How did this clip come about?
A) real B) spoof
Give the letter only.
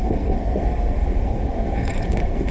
B